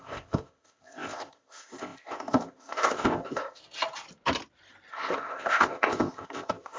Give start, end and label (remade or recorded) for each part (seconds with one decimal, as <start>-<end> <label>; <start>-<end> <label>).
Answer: 0.0-3.6 remade; 3.6-4.9 recorded; 4.9-6.8 remade